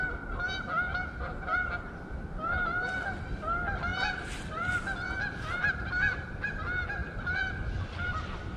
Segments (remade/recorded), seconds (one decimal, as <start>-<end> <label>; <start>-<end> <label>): 0.0-3.9 recorded; 3.9-4.8 remade; 4.8-5.6 recorded; 5.6-6.5 remade; 6.5-7.0 recorded; 7.0-8.6 remade